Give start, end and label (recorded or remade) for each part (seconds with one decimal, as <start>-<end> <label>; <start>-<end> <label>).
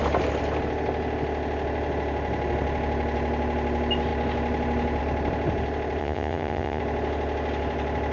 0.0-6.0 recorded; 6.0-6.8 remade; 6.8-8.1 recorded